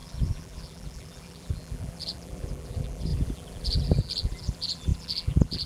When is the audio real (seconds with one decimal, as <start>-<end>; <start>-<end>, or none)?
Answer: none